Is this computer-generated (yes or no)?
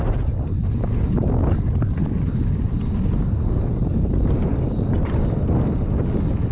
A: no